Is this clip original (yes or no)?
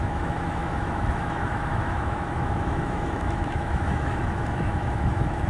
no